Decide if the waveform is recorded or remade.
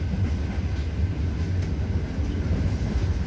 recorded